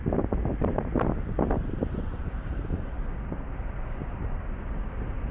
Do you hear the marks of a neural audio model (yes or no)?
yes